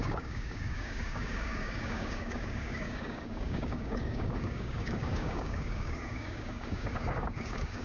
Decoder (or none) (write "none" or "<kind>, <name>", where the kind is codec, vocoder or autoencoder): codec, DAC